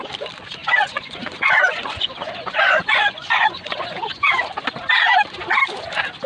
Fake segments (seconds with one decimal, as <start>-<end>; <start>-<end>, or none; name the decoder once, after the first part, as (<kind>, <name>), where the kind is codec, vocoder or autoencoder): 0.6-4.3 (vocoder, Vocos)